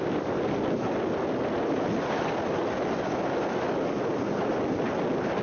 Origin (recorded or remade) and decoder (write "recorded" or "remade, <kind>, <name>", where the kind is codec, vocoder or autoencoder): recorded